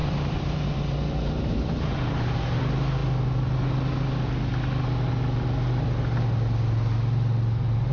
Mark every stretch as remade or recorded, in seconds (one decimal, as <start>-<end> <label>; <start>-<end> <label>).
0.0-2.6 remade; 2.6-7.9 recorded

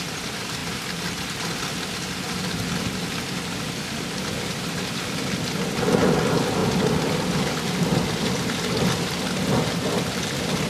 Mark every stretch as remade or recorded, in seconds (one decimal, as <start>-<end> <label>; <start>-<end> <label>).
0.0-10.7 recorded

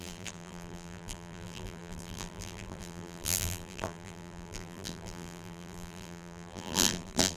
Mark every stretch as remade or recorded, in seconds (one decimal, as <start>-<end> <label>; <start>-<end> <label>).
0.0-7.4 remade

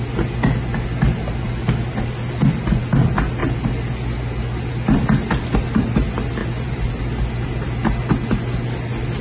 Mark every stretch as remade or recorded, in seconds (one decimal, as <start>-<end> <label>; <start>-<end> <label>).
0.0-6.4 recorded; 6.4-7.0 remade; 7.0-9.2 recorded